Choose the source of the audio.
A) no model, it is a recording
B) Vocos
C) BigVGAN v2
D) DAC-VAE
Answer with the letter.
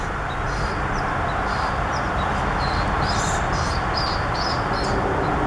A